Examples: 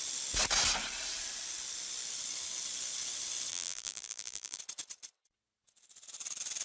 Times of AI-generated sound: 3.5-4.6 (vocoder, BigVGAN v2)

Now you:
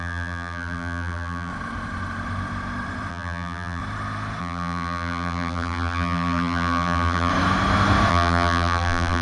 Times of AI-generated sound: 0.0-1.5 (vocoder, BigVGAN v2); 3.1-3.8; 4.4-7.3; 8.1-9.2

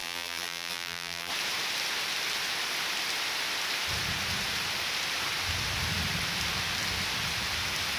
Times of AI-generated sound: 0.0-1.3 (vocoder, BigVGAN v2)

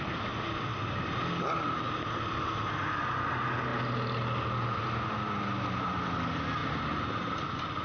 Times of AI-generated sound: 6.6-7.3 (vocoder, BigVGAN v2)

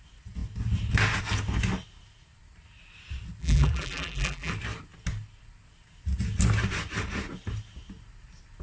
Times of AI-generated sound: 3.4-4.5 (vocoder, BigVGAN v2)